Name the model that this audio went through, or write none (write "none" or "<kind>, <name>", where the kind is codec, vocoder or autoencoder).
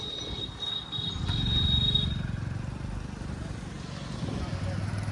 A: none